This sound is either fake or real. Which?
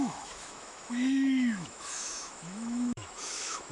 fake